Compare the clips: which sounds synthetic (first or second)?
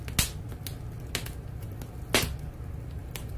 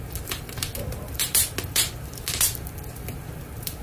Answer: second